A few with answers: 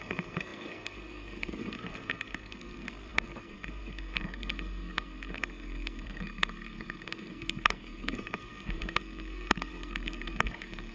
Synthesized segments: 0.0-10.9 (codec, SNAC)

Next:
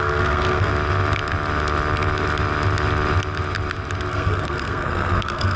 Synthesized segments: 0.0-0.7 (codec, SNAC); 4.1-5.6

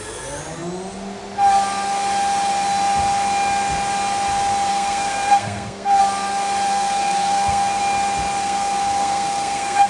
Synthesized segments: 4.7-6.0 (codec, SNAC); 6.7-7.8; 8.4-9.9

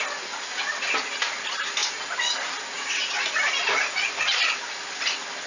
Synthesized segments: none

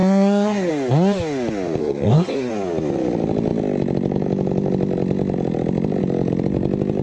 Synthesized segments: 0.0-0.7 (codec, SNAC); 1.8-2.5